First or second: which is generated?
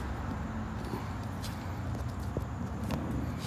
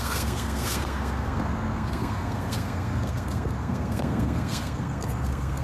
second